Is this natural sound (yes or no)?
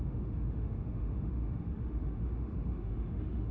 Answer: no